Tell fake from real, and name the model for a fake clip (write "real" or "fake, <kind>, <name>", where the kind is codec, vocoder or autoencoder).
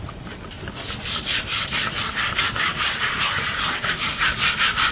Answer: real